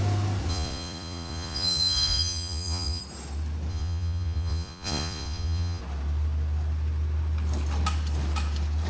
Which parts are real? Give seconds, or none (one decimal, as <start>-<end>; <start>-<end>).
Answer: 0.0-0.5; 3.0-3.7; 5.8-8.9